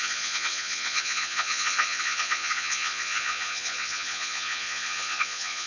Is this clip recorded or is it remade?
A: remade